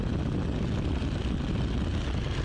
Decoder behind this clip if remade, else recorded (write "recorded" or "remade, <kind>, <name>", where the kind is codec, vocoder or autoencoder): recorded